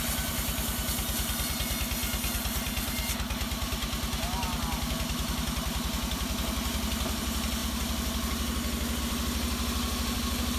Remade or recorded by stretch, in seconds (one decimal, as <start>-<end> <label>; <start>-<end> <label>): 0.0-7.6 remade; 7.6-9.0 recorded; 9.0-10.6 remade